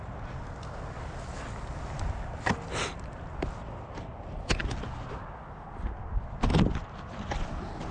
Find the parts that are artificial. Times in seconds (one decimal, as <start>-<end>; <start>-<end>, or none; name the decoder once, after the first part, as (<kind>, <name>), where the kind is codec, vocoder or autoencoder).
none